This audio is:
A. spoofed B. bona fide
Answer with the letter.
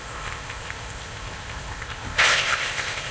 A